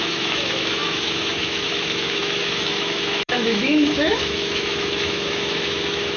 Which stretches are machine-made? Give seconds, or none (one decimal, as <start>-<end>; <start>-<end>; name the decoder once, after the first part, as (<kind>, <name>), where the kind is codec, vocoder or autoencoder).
0.0-6.2 (autoencoder, DAC-VAE)